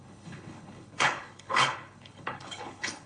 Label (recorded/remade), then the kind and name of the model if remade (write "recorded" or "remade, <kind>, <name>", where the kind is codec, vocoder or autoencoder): remade, codec, HILCodec